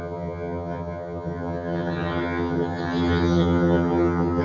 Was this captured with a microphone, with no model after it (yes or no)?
no